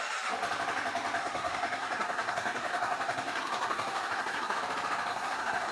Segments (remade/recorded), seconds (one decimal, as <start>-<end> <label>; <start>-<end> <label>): 0.0-1.2 recorded; 1.2-4.6 remade; 4.6-5.1 recorded; 5.1-5.7 remade